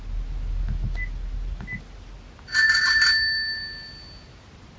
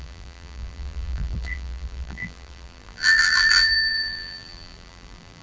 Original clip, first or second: first